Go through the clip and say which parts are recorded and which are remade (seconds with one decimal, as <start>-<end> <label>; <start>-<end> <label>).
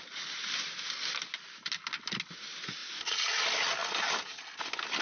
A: 0.0-5.0 recorded